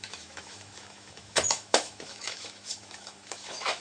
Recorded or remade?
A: remade